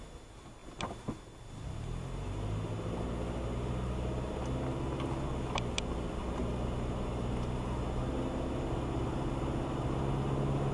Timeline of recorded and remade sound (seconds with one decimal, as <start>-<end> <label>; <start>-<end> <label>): 0.0-10.7 recorded